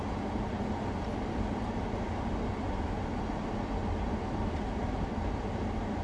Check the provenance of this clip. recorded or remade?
recorded